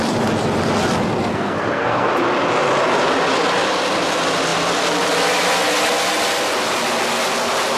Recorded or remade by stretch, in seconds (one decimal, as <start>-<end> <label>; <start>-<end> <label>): 0.0-1.3 recorded; 1.3-2.1 remade; 2.1-7.8 recorded